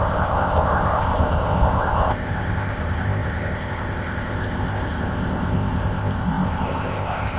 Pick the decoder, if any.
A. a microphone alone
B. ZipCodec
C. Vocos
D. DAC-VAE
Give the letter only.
B